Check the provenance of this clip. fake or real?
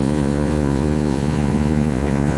fake